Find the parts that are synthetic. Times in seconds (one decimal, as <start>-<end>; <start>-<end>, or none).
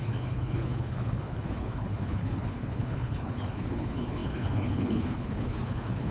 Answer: 0.0-6.1